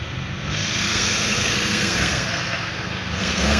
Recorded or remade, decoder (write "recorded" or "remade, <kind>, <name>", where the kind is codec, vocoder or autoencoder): remade, codec, SNAC